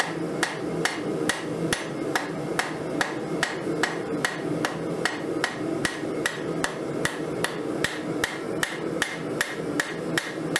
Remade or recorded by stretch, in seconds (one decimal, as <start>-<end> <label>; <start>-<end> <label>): 0.0-10.6 recorded